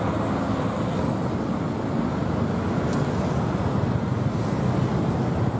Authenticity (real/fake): real